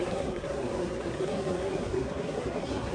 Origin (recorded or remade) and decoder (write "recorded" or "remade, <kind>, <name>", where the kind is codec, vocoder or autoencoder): remade, codec, SNAC